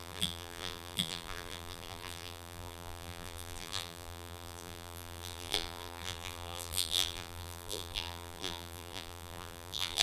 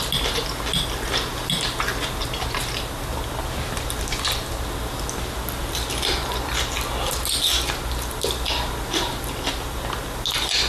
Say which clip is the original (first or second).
second